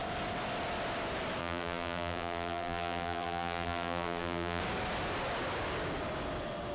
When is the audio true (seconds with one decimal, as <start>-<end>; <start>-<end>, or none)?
0.0-1.4; 4.6-6.7